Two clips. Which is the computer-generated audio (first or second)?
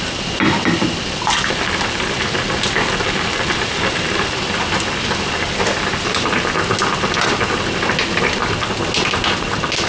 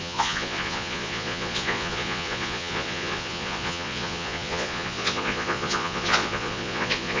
second